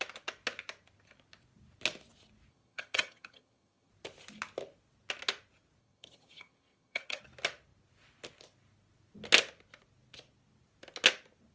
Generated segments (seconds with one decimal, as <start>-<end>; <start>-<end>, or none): 2.5-3.9; 5.8-7.2

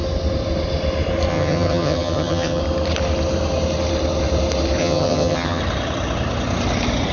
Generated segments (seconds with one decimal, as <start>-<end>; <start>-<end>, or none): 1.3-2.6; 4.8-5.6